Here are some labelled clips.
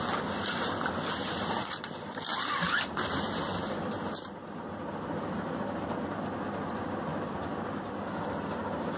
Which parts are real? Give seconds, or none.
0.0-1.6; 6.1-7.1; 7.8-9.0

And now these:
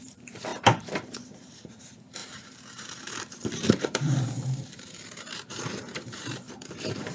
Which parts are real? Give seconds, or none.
none

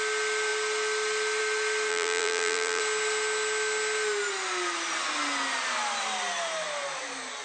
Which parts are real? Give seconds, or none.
0.0-1.9; 2.8-7.4

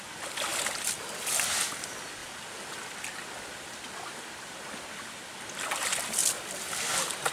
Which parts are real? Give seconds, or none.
0.0-7.3

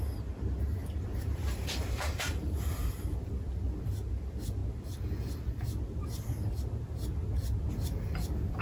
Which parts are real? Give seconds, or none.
0.0-0.8; 2.9-8.6